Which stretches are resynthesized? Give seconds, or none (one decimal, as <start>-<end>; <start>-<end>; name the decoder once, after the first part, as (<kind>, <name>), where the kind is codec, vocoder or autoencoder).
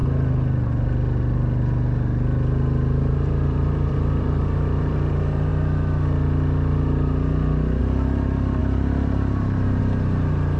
3.1-5.5 (vocoder, BigVGAN v2); 7.8-10.6